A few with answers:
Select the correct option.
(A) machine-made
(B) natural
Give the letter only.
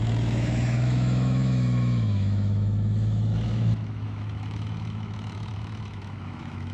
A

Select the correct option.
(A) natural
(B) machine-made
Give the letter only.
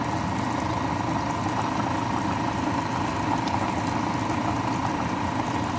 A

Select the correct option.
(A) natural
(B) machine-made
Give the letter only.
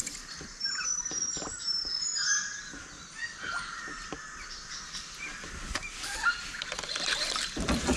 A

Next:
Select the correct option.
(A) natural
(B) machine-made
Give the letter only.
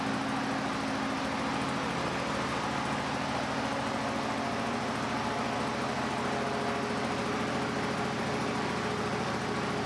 A